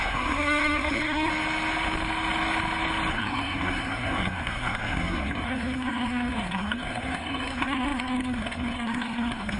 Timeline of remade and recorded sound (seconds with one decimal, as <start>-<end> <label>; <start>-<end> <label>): 0.0-1.3 remade; 1.3-3.1 recorded; 3.1-9.6 remade